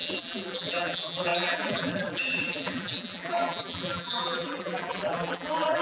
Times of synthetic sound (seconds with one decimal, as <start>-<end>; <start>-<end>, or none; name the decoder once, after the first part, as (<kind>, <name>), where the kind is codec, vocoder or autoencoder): 0.0-5.8 (vocoder, BigVGAN v2)